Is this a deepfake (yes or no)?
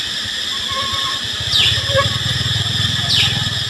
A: no